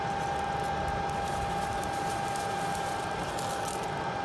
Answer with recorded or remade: recorded